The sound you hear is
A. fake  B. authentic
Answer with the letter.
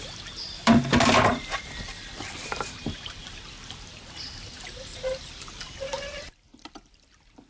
A